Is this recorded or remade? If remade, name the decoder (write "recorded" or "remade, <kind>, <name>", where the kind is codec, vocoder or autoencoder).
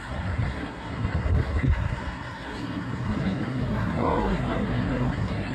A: remade, codec, SNAC